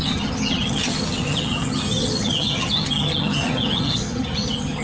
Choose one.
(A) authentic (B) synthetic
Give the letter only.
B